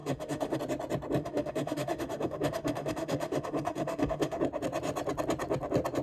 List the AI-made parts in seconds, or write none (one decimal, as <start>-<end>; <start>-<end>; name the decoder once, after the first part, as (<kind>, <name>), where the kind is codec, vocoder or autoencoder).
0.0-0.6 (autoencoder, DAC-VAE); 1.2-4.4